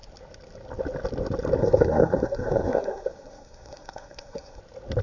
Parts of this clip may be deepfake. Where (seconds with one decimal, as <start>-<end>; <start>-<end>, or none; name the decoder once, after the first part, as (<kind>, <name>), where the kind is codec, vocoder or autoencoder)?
1.6-4.6 (codec, SNAC)